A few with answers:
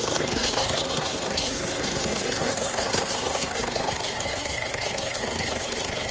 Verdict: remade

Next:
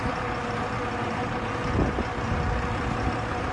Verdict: recorded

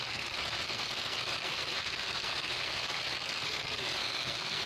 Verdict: remade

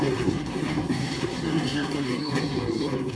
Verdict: remade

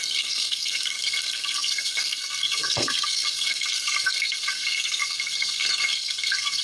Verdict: remade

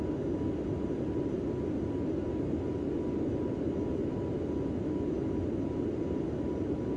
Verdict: recorded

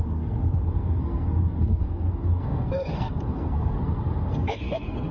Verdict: remade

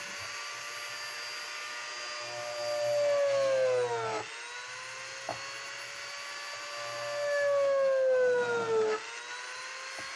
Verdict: recorded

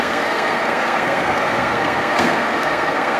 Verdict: remade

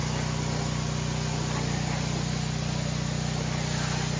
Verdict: recorded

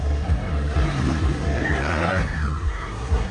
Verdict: remade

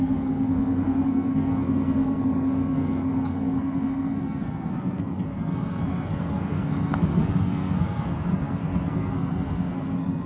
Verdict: remade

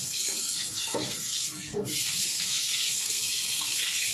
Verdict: remade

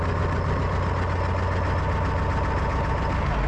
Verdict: recorded